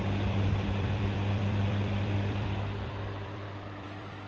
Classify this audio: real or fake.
fake